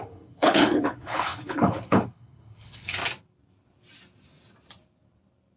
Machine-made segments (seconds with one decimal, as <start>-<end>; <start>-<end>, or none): 0.0-3.0